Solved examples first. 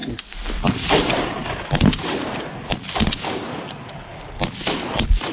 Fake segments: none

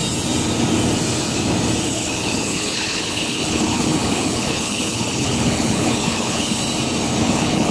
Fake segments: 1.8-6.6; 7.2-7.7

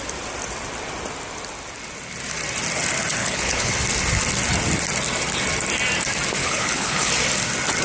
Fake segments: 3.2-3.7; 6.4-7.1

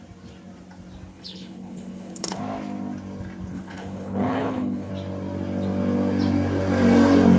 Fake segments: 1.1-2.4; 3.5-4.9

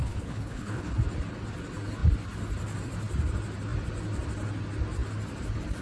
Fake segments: 0.0-0.9